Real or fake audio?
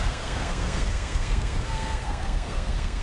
fake